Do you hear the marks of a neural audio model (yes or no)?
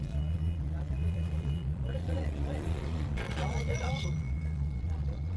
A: yes